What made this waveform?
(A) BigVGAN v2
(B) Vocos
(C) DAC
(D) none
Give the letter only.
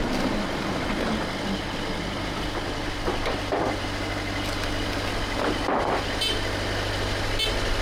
D